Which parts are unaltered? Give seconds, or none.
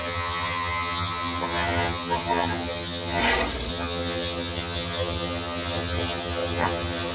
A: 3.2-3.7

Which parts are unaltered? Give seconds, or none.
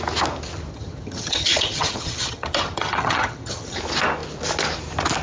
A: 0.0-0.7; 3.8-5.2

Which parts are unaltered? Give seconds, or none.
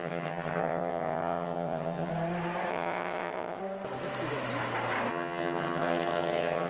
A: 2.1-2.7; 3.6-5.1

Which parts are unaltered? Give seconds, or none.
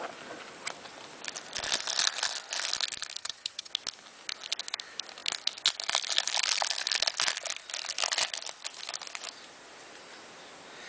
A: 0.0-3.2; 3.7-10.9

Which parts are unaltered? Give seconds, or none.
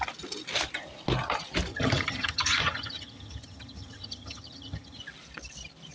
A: 0.0-1.7; 5.0-5.9